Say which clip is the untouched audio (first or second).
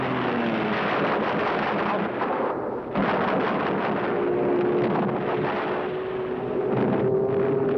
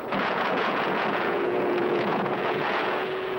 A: first